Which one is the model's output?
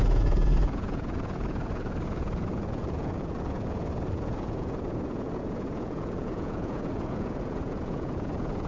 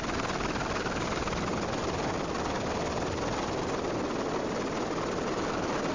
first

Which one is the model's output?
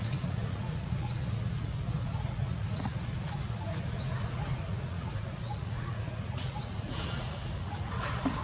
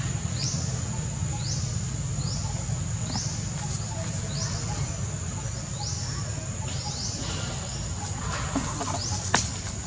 first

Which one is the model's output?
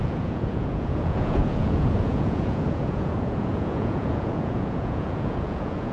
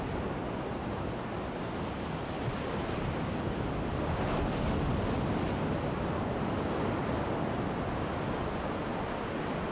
first